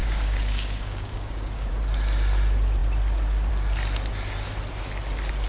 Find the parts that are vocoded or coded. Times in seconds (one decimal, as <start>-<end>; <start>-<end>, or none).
0.0-1.7